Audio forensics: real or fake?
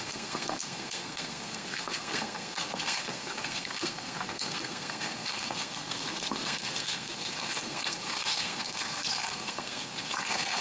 fake